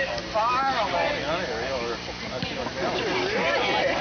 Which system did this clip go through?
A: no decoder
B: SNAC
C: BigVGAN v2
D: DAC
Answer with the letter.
A